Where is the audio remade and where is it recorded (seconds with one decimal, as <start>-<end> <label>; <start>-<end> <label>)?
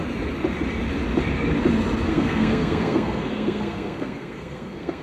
0.0-2.1 recorded; 2.1-5.0 remade